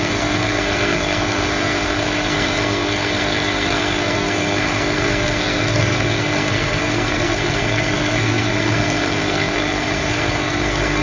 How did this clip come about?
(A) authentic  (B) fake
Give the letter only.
B